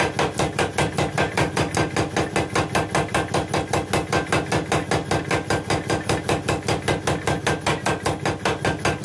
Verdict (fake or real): real